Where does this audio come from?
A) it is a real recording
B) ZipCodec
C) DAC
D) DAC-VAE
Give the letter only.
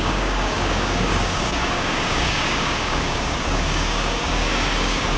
C